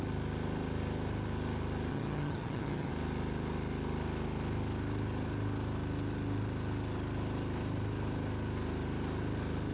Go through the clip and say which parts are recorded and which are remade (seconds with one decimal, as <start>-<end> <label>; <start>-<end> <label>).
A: 0.0-1.9 recorded; 1.9-2.9 remade; 2.9-9.7 recorded